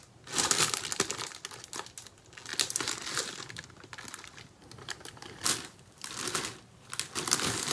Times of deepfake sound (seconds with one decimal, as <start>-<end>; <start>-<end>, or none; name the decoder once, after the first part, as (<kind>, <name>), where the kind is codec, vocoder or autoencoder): 4.6-6.2 (vocoder, BigVGAN v2)